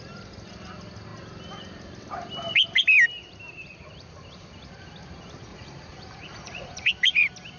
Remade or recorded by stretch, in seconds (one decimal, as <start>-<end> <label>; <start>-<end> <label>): 0.0-5.5 recorded; 5.5-6.9 remade; 6.9-7.6 recorded